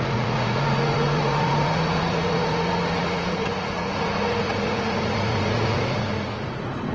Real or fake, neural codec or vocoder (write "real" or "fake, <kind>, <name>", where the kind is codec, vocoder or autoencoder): fake, vocoder, Vocos